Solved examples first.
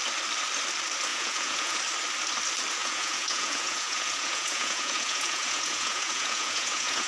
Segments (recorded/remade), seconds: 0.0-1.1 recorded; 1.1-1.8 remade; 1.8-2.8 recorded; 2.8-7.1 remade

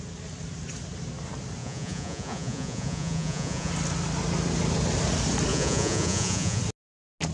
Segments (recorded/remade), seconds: 0.0-1.6 recorded; 1.6-3.7 remade; 3.7-5.5 recorded; 5.5-6.6 remade; 6.6-7.3 recorded

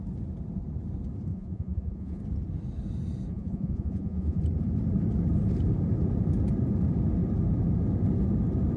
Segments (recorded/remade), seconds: 0.0-1.3 recorded; 1.3-2.2 remade; 2.2-3.3 recorded; 3.3-4.4 remade; 4.4-8.8 recorded

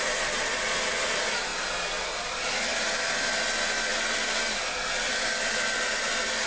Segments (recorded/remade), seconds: 0.0-6.5 recorded

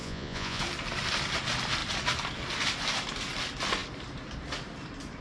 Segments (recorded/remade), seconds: 0.0-0.6 remade; 0.6-5.2 recorded

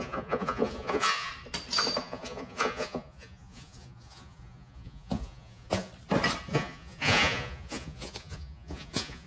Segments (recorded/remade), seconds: 0.0-1.3 remade; 1.3-2.0 recorded; 2.0-5.9 remade; 5.9-6.5 recorded; 6.5-9.3 remade